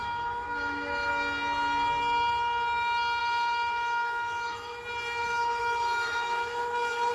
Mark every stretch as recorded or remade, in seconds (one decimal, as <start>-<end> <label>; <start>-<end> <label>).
0.0-1.1 remade; 1.1-3.2 recorded; 3.2-4.8 remade; 4.8-5.2 recorded; 5.2-7.1 remade